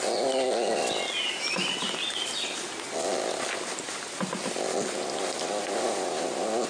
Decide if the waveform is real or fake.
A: real